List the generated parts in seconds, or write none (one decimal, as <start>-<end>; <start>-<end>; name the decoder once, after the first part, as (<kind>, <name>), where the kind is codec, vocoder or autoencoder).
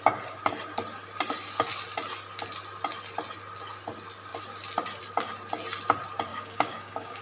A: 6.3-7.2 (codec, DAC)